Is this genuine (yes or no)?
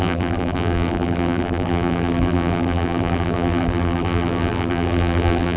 no